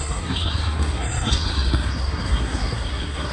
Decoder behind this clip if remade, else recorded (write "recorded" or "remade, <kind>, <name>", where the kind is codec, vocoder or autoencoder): remade, codec, SNAC